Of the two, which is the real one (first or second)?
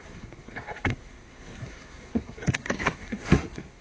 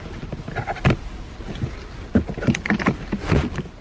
second